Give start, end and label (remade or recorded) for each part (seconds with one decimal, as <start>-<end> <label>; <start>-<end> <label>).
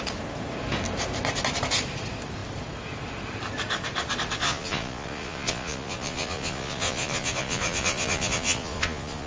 0.0-4.4 recorded; 4.4-9.3 remade